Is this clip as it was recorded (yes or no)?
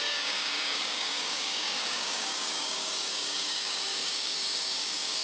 no